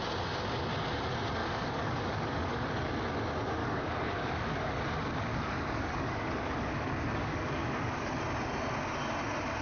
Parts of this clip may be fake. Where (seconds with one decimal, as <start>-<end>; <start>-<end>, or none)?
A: 1.4-2.9; 3.6-4.8; 5.3-8.2